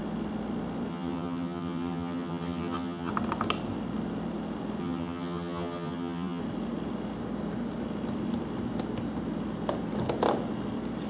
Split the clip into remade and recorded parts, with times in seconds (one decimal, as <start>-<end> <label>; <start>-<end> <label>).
0.0-0.9 recorded; 0.9-3.1 remade; 3.1-4.8 recorded; 4.8-6.4 remade; 6.4-11.1 recorded